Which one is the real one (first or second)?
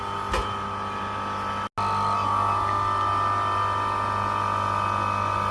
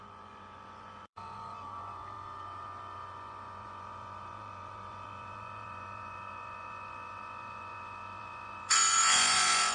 first